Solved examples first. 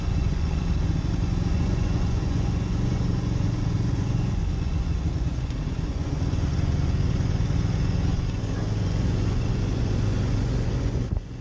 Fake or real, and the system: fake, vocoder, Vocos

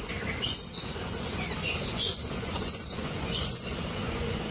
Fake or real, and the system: fake, vocoder, Vocos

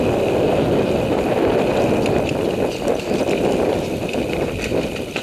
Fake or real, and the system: real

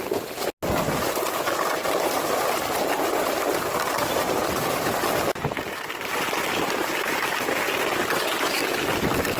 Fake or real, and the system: real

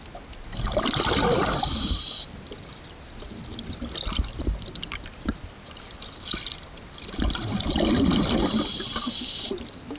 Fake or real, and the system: real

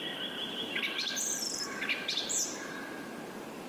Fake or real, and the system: fake, vocoder, BigVGAN v2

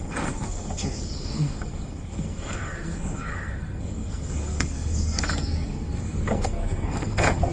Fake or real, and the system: fake, codec, SNAC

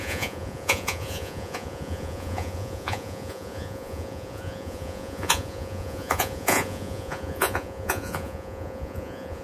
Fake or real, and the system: fake, vocoder, Vocos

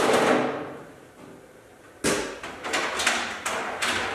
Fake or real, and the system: real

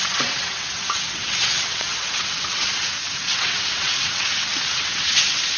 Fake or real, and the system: fake, vocoder, WaveNeXt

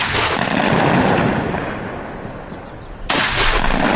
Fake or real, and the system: real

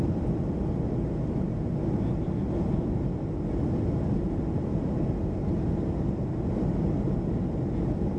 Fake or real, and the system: real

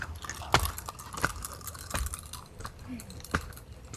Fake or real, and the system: real